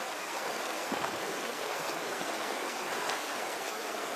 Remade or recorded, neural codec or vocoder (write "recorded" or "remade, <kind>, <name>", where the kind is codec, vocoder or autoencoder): remade, codec, SNAC